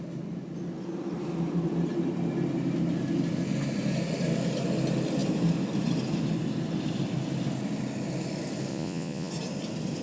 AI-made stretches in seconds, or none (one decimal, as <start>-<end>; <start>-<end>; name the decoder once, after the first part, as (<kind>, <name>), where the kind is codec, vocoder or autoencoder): 8.7-9.3 (vocoder, Vocos)